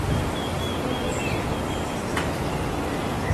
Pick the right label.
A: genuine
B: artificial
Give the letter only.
B